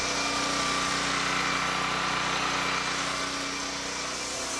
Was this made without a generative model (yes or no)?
yes